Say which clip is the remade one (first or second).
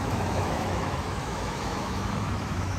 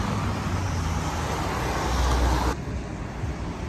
first